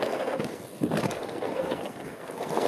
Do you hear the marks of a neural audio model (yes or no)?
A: yes